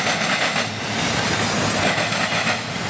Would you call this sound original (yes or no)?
yes